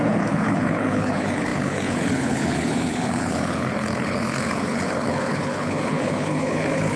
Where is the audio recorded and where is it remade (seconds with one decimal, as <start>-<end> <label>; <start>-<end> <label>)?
0.0-7.0 remade